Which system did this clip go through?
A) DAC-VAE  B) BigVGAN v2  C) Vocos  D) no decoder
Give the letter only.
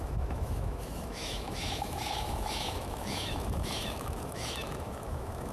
A